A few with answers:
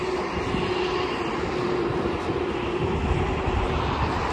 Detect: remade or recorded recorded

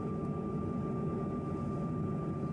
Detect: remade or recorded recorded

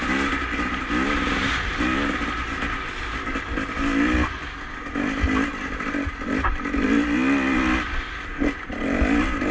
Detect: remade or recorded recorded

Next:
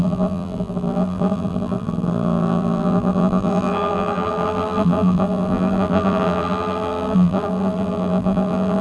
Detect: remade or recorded remade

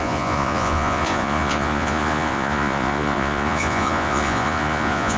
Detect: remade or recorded remade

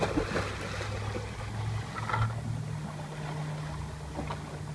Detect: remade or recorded recorded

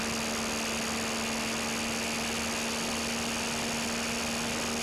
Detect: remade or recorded recorded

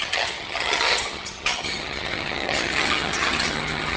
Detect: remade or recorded remade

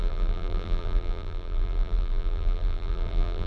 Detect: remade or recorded remade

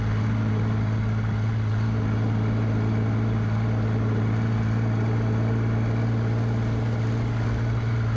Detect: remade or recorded recorded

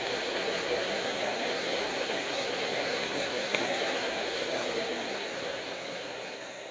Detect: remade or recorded remade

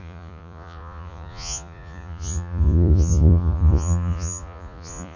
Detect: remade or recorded remade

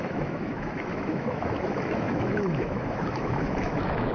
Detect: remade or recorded remade